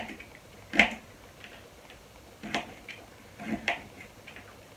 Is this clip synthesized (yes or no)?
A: no